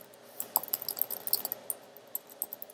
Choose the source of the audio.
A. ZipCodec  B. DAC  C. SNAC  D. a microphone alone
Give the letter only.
D